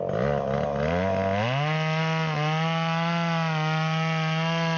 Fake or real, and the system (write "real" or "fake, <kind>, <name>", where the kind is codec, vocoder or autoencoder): real